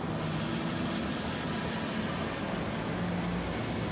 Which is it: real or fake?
real